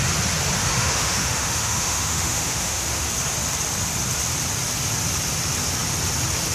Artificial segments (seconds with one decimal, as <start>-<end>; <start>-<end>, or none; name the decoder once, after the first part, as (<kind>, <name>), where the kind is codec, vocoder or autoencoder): 0.6-3.1 (autoencoder, DAC-VAE)

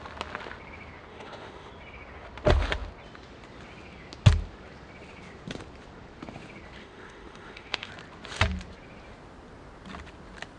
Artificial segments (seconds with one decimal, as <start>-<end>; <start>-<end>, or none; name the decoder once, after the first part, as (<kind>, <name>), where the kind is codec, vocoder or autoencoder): 1.1-1.7 (autoencoder, DAC-VAE); 6.8-7.9

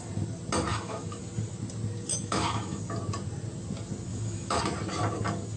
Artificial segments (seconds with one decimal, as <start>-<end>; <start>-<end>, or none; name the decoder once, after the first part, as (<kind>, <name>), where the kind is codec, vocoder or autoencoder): 0.7-1.2 (autoencoder, DAC-VAE); 2.1-2.8; 4.1-4.6